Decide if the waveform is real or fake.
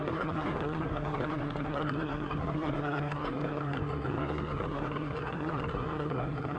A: fake